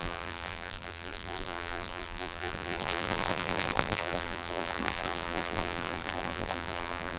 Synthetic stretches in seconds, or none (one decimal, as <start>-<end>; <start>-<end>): 0.0-7.2